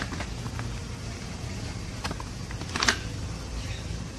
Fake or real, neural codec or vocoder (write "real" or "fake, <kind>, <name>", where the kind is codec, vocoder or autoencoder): real